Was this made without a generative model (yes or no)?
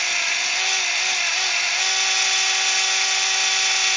yes